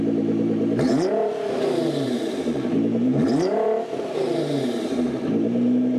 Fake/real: fake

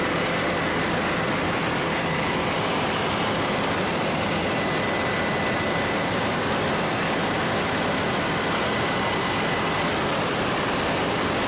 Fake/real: real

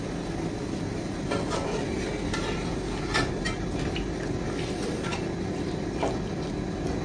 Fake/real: real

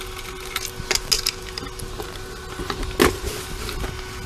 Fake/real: real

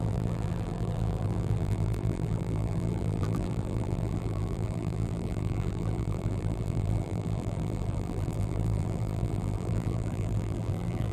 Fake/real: fake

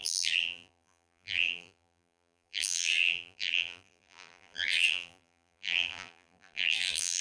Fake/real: fake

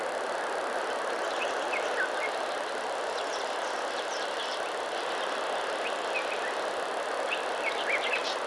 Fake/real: real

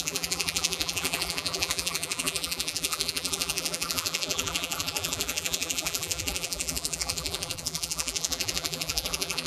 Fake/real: fake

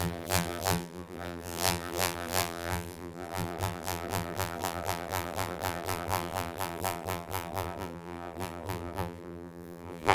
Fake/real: fake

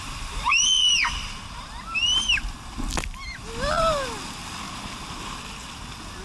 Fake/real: real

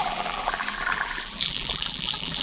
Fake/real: fake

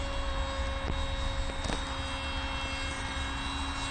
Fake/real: real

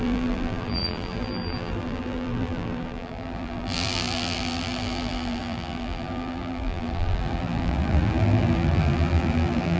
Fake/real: fake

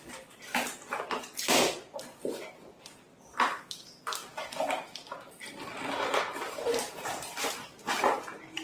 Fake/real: real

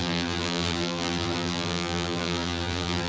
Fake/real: fake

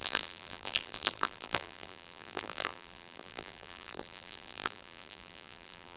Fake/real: fake